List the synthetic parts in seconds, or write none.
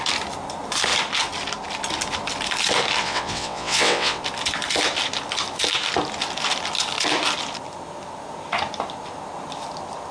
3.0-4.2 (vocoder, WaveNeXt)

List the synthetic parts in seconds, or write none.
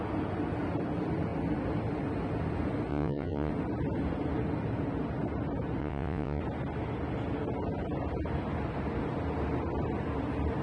2.9-3.5 (vocoder, WaveNeXt); 5.8-6.4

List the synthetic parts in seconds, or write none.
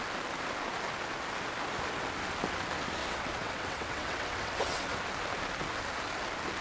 3.0-5.0 (vocoder, WaveNeXt)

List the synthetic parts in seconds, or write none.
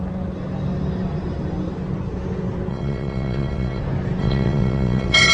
2.7-3.8 (vocoder, WaveNeXt); 4.2-5.3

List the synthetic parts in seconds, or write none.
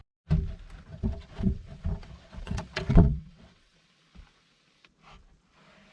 0.9-3.8 (vocoder, WaveNeXt)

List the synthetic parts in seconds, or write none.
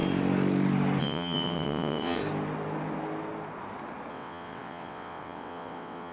1.0-2.2 (vocoder, WaveNeXt); 4.1-6.1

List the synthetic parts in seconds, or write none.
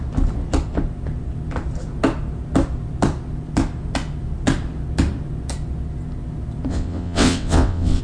6.7-8.0 (vocoder, WaveNeXt)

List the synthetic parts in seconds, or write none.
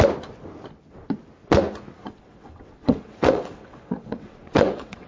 2.0-5.1 (vocoder, WaveNeXt)